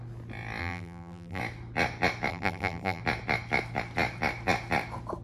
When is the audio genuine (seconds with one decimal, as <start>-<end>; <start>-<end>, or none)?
0.0-0.6; 1.4-2.3; 3.0-5.2